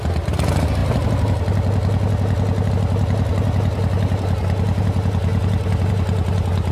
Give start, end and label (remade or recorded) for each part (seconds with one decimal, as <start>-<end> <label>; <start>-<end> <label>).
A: 0.0-6.7 recorded

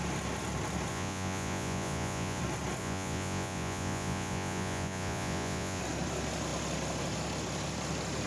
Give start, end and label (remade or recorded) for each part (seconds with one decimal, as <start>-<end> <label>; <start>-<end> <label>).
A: 0.0-0.9 recorded; 0.9-2.4 remade; 2.4-2.8 recorded; 2.8-5.8 remade; 5.8-8.3 recorded

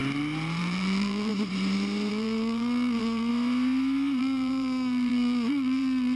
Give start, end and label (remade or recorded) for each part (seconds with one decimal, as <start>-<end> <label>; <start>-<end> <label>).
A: 0.0-0.6 recorded; 0.6-1.3 remade; 1.3-2.1 recorded; 2.1-3.3 remade; 3.3-4.2 recorded; 4.2-6.2 remade

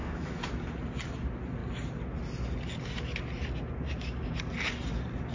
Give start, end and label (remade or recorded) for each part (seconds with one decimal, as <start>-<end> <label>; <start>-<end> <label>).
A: 0.0-0.5 remade; 0.5-5.3 recorded

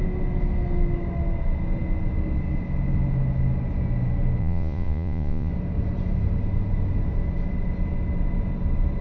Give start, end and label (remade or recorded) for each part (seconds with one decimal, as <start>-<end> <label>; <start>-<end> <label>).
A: 0.0-4.4 recorded; 4.4-5.5 remade; 5.5-9.0 recorded

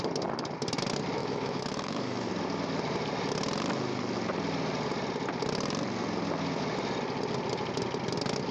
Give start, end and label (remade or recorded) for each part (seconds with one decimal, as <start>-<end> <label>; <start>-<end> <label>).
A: 0.0-1.2 recorded; 1.2-2.3 remade; 2.3-8.5 recorded